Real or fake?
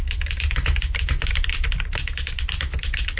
real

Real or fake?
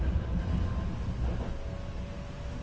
real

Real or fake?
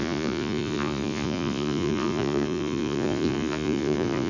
fake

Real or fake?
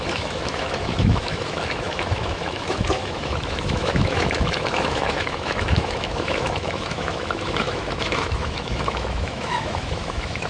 fake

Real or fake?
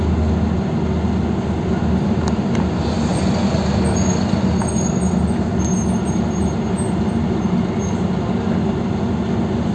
real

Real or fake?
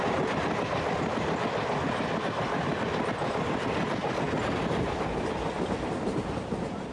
real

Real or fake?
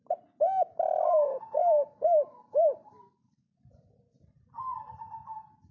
real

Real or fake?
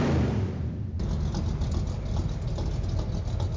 real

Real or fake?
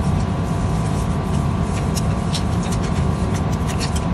fake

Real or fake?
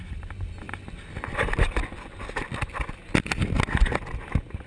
real